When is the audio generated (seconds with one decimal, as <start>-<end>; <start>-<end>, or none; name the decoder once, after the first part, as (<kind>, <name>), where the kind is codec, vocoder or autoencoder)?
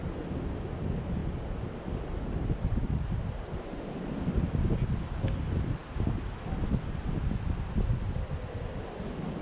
none